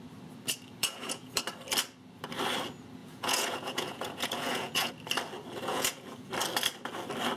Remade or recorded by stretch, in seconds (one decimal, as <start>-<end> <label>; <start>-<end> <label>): 0.0-0.8 recorded; 0.8-1.4 remade; 1.4-3.0 recorded; 3.0-4.9 remade; 4.9-5.7 recorded; 5.7-6.3 remade; 6.3-7.4 recorded